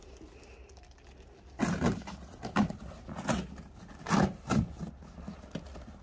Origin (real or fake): real